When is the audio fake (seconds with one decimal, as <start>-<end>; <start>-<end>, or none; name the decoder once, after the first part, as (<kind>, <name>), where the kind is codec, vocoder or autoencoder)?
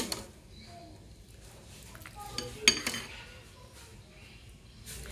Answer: none